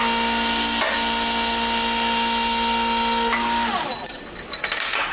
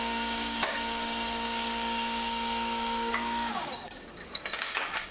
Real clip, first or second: first